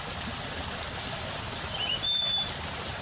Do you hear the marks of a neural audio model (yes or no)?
no